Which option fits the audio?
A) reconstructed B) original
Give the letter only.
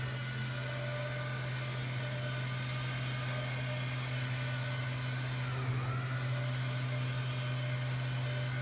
B